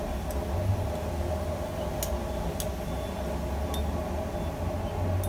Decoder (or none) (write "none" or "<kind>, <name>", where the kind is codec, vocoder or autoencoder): none